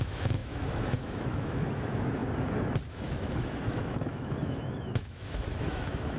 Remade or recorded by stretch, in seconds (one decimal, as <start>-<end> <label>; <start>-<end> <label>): 0.0-2.2 remade; 2.2-2.9 recorded; 2.9-6.2 remade